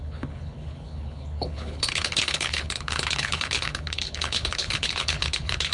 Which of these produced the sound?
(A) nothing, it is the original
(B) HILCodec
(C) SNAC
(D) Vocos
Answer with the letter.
B